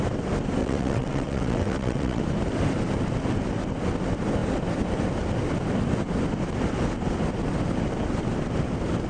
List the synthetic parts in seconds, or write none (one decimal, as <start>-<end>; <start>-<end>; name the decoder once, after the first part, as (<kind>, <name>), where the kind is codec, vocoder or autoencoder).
0.6-2.2 (vocoder, WaveNeXt)